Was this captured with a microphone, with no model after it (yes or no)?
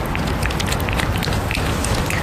yes